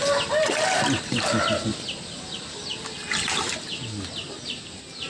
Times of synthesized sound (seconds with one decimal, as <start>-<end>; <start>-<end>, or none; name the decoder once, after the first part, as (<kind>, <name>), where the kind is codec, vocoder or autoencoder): none